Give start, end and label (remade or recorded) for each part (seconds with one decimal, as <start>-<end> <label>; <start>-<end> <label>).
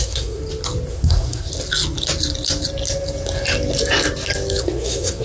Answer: 0.0-0.4 remade; 0.4-0.9 recorded; 0.9-1.5 remade; 1.5-4.6 recorded; 4.6-5.2 remade